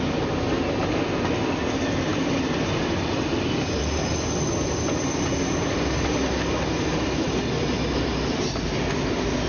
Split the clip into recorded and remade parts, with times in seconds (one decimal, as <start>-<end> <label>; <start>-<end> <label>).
0.0-9.5 recorded